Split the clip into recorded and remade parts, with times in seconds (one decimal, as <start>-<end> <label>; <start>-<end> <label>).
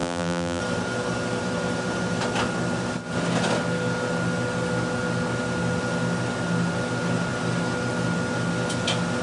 0.0-0.6 remade; 0.6-9.2 recorded